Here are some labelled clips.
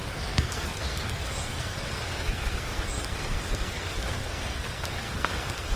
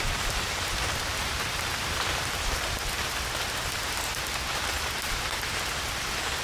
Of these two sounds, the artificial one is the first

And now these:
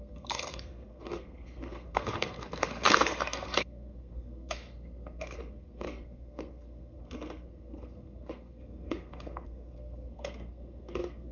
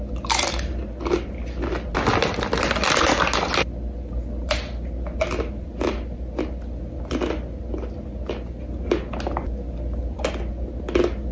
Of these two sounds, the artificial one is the first